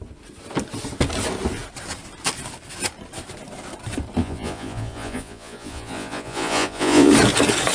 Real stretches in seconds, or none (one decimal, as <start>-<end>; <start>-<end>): 0.0-4.2; 7.1-7.7

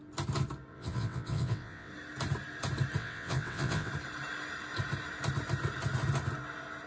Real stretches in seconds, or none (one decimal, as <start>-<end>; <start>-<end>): 0.0-0.7; 1.9-3.0; 3.9-6.9

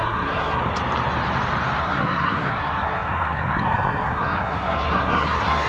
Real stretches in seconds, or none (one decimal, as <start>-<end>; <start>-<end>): 0.6-1.8

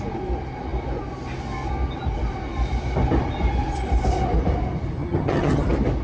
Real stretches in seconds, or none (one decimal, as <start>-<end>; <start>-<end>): 0.0-5.0; 5.6-6.0

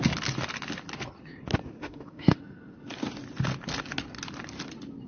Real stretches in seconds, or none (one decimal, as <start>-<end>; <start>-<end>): 0.0-1.8; 2.4-5.1

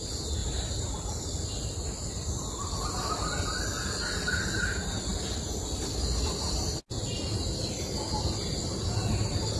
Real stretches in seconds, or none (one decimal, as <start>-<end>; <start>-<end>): 0.0-0.4; 1.1-9.6